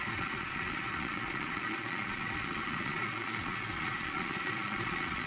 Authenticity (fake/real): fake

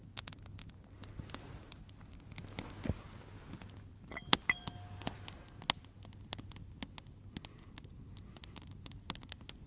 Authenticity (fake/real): real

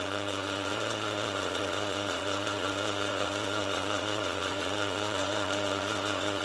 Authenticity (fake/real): fake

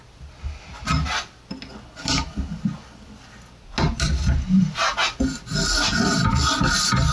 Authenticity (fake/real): real